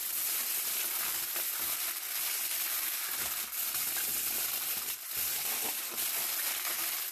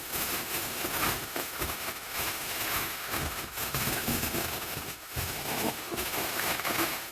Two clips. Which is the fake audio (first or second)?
second